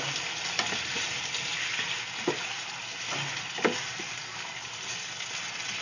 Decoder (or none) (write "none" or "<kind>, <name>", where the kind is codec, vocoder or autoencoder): none